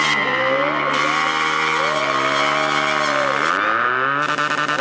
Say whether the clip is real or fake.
real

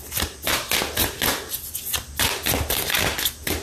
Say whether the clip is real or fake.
real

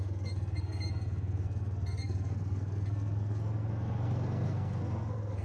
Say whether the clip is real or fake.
fake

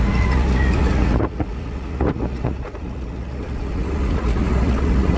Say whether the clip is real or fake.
fake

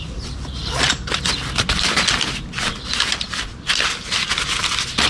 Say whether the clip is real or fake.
real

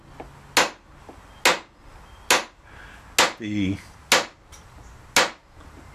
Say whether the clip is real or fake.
real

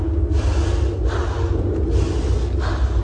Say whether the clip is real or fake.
real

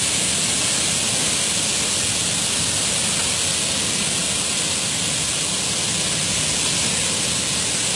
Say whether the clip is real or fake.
real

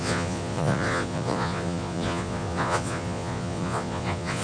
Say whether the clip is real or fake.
fake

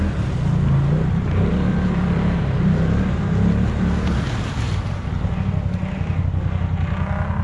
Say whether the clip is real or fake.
real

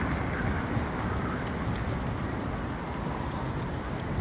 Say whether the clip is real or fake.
real